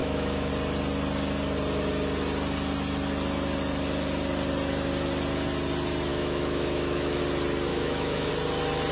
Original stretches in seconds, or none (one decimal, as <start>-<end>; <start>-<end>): 0.5-6.1; 7.2-7.7; 8.3-8.9